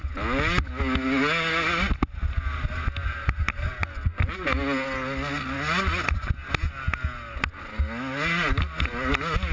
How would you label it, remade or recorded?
recorded